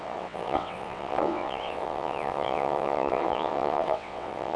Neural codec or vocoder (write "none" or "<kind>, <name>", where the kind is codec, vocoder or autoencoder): vocoder, WaveNeXt